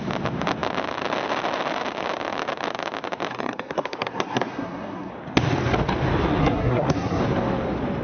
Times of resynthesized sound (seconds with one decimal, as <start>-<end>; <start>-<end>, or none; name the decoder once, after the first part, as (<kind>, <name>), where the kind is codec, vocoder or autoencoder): 3.3-5.1 (codec, SNAC); 6.4-7.2